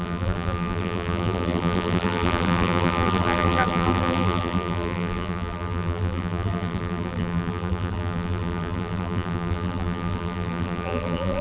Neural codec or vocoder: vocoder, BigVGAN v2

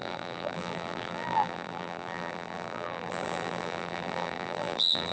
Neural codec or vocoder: vocoder, BigVGAN v2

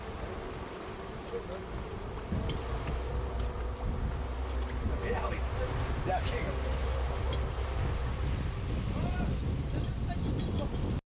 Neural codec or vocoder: none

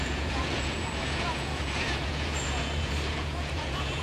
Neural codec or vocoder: vocoder, Vocos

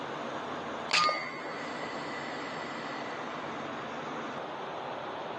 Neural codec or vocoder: none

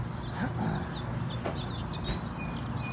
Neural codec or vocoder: none